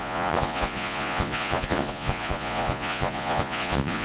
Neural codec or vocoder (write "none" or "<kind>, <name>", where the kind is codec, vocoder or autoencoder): vocoder, Vocos